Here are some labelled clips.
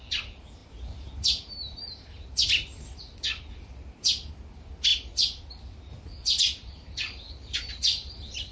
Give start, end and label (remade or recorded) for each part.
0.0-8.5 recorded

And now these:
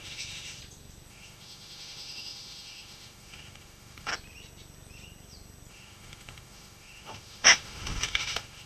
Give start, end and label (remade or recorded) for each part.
0.0-0.6 remade; 0.6-1.1 recorded; 1.1-4.1 remade; 4.1-5.7 recorded; 5.7-8.7 remade

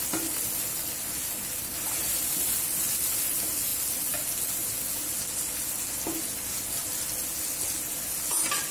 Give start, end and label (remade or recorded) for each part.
0.0-8.7 recorded

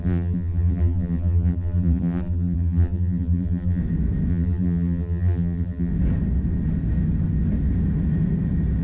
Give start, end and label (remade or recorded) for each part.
0.0-3.8 remade; 3.8-4.3 recorded; 4.3-5.9 remade; 5.9-8.8 recorded

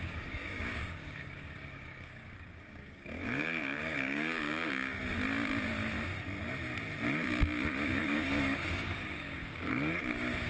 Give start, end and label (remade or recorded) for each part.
0.0-5.0 remade; 5.0-8.0 recorded; 8.0-10.5 remade